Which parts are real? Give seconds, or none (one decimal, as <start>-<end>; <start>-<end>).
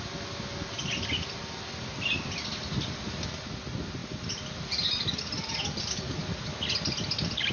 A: 0.0-7.5